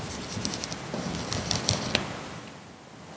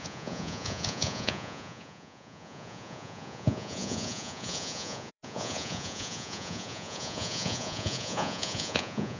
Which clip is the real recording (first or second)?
first